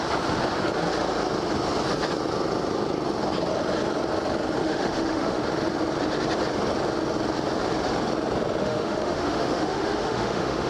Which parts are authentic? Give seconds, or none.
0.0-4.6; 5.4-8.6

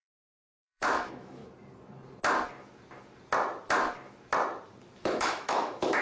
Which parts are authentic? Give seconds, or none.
1.4-5.0

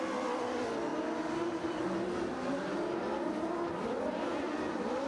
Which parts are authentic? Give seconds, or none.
0.0-5.1

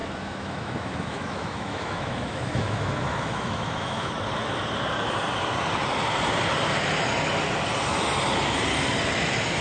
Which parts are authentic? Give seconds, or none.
4.1-9.6

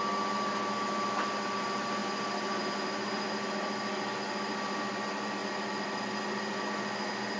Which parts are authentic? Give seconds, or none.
0.0-7.4